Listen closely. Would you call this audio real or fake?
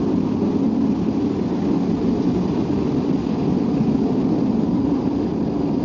real